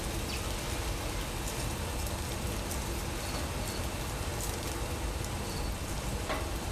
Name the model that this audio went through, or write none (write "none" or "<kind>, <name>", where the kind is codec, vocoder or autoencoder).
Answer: none